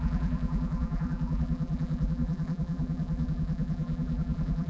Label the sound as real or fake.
fake